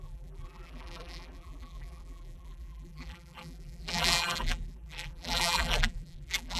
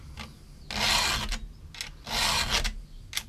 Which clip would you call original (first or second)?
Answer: second